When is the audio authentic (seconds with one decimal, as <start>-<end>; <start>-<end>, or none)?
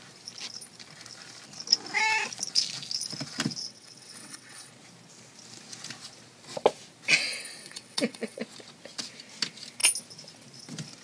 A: 0.0-3.6; 4.7-7.3; 8.4-11.0